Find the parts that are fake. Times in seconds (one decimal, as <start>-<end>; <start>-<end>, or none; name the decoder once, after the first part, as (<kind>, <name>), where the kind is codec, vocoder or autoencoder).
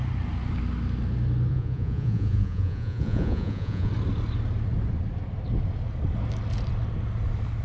1.5-3.9 (vocoder, Vocos)